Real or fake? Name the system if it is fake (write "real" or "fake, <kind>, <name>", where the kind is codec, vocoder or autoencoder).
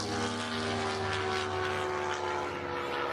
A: real